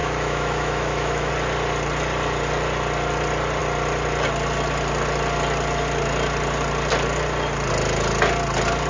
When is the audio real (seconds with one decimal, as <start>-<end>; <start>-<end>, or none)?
1.3-8.9